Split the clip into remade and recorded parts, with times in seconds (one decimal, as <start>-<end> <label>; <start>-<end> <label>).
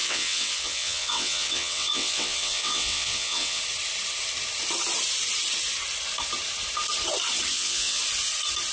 0.0-3.6 remade; 3.6-7.5 recorded; 7.5-8.0 remade; 8.0-8.7 recorded